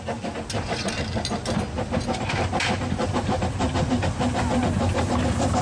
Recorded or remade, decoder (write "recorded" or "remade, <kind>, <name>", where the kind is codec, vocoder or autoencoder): recorded